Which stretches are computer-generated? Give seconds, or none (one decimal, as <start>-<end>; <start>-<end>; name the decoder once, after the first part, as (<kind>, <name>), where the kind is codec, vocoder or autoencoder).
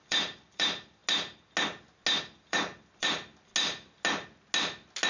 0.0-1.0 (vocoder, BigVGAN v2); 2.2-3.5